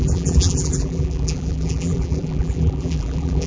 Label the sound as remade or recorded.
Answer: remade